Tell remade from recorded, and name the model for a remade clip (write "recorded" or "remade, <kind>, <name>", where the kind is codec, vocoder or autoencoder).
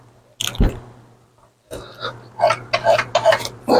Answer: recorded